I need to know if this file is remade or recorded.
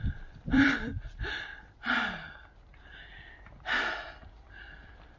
remade